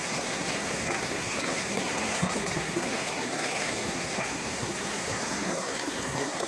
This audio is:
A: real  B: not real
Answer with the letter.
B